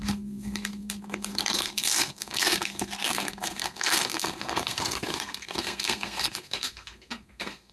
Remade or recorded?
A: remade